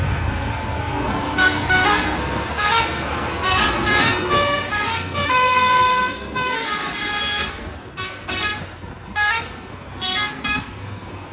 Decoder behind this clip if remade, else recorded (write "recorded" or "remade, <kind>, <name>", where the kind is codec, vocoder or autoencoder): remade, codec, SNAC